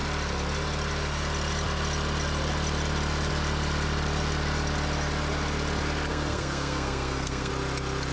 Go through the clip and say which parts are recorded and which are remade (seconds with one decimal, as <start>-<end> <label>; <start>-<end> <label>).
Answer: 0.0-6.1 recorded; 6.1-7.5 remade; 7.5-8.1 recorded